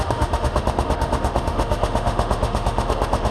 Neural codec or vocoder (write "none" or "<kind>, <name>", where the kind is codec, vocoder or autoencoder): autoencoder, DAC-VAE